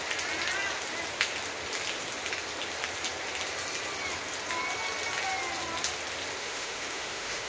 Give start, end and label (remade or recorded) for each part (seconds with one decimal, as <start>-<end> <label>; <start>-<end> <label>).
0.0-6.4 recorded; 6.4-7.5 remade